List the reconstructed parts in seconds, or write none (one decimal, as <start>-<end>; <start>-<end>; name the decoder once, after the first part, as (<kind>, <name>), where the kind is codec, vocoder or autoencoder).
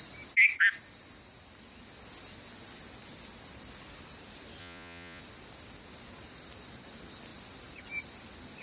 4.6-5.2 (vocoder, Vocos)